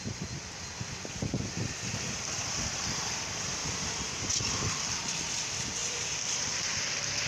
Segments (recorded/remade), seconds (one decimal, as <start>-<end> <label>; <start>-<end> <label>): 0.0-3.6 recorded; 3.6-4.2 remade; 4.2-5.8 recorded; 5.8-7.3 remade